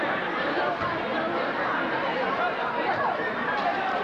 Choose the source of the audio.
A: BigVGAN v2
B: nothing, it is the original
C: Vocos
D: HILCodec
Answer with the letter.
A